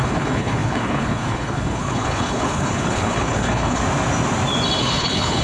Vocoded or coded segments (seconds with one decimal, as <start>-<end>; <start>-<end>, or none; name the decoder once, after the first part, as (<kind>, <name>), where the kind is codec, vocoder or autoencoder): 0.0-3.8 (codec, HILCodec); 4.8-5.4

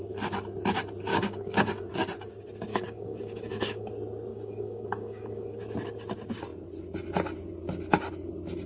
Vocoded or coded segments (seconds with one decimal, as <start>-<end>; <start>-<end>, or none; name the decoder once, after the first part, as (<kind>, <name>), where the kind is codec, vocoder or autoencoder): 1.1-1.9 (codec, DAC); 2.7-3.9; 4.3-5.6

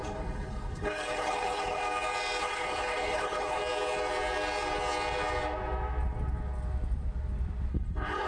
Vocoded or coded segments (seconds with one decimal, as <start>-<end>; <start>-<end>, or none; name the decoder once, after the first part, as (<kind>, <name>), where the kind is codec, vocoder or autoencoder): 0.0-1.8 (codec, HILCodec); 2.4-3.6; 7.7-8.3